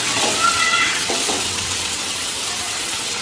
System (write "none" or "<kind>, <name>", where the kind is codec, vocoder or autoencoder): vocoder, WaveNeXt